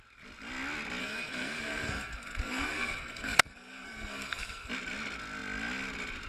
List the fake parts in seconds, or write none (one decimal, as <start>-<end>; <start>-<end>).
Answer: 1.0-4.7